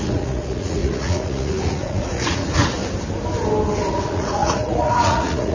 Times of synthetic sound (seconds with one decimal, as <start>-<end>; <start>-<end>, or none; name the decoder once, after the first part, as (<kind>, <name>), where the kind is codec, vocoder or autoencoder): 0.0-2.8 (vocoder, Vocos); 3.9-5.5